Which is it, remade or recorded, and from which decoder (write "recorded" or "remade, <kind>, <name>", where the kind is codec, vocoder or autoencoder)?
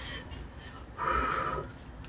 recorded